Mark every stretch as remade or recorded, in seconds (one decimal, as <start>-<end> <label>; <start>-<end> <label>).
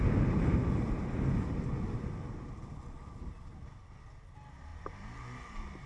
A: 0.0-4.7 recorded; 4.7-5.9 remade